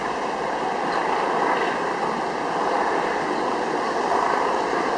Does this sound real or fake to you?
fake